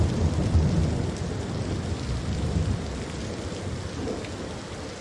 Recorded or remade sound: recorded